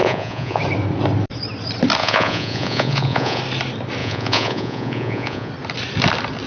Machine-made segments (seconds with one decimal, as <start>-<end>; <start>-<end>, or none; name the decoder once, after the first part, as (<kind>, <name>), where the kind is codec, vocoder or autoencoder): 0.0-0.6 (vocoder, Vocos); 2.0-3.4; 4.0-5.5